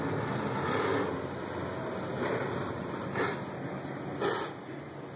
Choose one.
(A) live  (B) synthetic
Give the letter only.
A